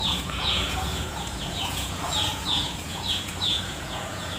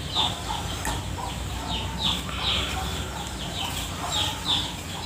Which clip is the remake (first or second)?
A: first